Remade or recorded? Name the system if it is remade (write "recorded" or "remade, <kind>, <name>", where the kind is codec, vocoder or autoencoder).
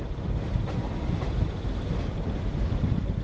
recorded